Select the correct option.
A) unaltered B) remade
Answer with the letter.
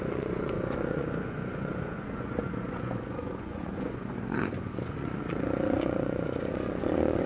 B